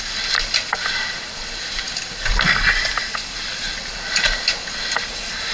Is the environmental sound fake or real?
real